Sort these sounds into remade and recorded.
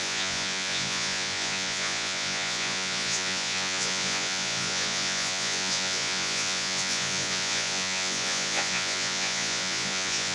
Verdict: remade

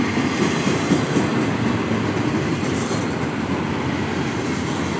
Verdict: recorded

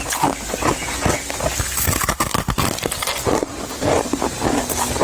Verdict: recorded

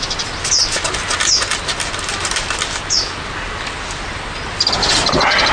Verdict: recorded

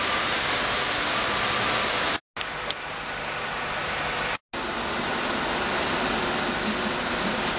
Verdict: recorded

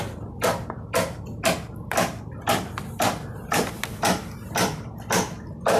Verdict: recorded